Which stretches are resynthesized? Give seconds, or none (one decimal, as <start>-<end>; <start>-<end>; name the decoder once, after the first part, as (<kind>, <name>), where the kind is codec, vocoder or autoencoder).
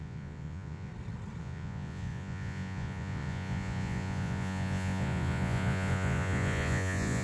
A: 0.0-0.9 (vocoder, Vocos); 1.4-7.2